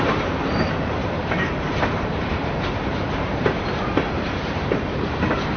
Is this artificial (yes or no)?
yes